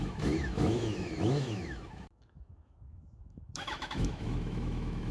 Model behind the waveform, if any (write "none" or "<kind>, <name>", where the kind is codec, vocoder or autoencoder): autoencoder, DAC-VAE